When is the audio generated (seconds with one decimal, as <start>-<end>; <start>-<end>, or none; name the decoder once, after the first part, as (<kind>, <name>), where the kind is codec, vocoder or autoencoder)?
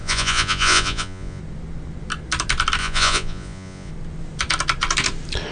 0.0-1.4 (vocoder, Vocos); 2.8-3.9